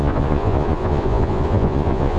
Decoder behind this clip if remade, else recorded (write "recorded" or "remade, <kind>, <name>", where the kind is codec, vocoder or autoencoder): remade, vocoder, Vocos